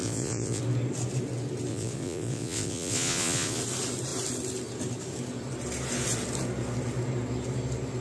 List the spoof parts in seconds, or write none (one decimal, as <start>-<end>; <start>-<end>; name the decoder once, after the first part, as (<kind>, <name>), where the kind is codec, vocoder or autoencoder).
0.0-0.6 (vocoder, Vocos); 1.7-3.6